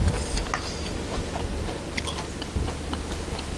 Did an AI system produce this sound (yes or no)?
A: no